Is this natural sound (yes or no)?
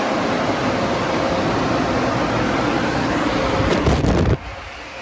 no